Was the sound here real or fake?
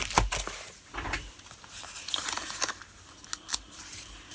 real